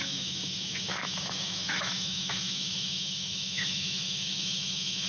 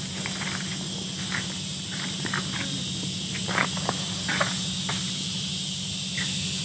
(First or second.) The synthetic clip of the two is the first